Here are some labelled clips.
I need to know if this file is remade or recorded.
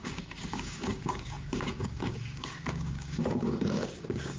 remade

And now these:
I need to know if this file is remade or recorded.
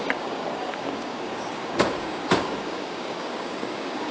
remade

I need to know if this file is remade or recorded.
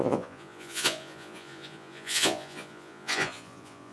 remade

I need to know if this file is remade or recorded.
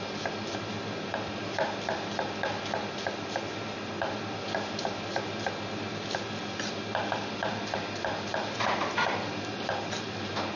recorded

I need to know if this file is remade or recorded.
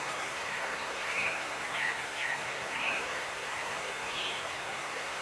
remade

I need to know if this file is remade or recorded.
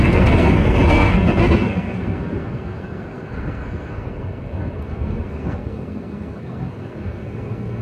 remade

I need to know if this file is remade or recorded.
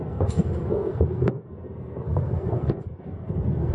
remade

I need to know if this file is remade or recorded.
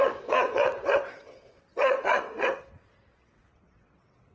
remade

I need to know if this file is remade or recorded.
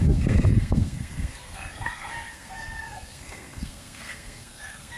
remade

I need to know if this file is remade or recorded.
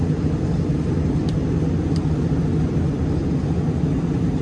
recorded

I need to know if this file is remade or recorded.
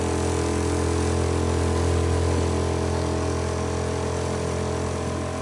recorded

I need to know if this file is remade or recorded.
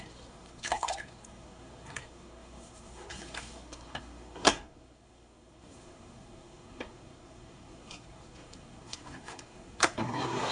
remade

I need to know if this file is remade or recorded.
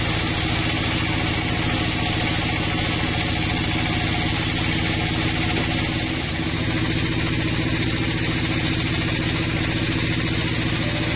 recorded